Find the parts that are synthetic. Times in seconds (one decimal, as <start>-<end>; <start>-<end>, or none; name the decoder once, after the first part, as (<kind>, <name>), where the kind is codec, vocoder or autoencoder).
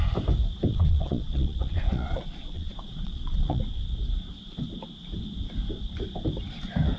0.7-3.6 (vocoder, Vocos)